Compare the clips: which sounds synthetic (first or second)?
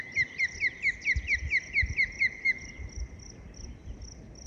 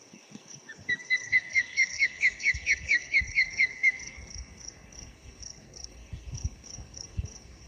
second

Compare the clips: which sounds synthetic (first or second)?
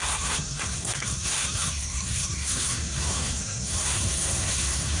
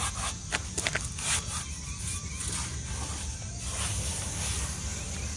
first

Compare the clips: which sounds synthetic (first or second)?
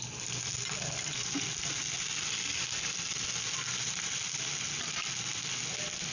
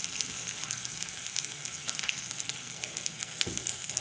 second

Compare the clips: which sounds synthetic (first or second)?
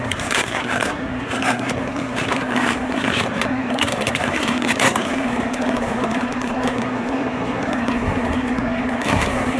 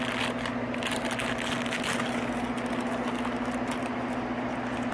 first